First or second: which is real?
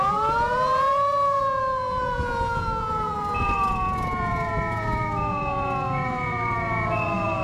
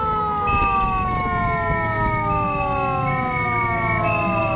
second